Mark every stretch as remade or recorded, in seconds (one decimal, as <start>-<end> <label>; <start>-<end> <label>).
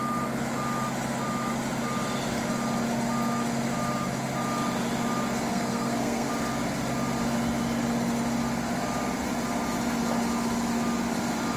0.0-5.5 recorded; 5.5-6.3 remade; 6.3-11.6 recorded